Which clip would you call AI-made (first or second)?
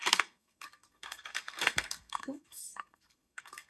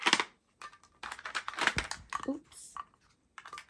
first